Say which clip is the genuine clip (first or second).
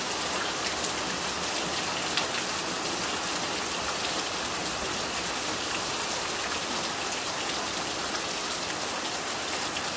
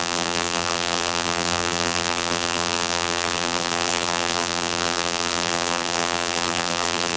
first